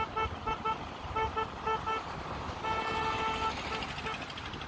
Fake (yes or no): no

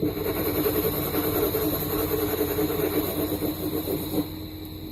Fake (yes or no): no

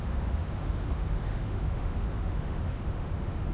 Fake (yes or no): yes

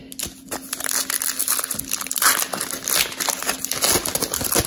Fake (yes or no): no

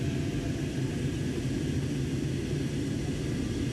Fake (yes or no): no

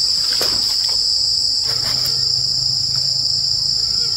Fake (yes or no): no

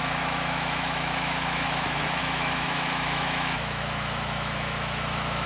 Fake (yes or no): yes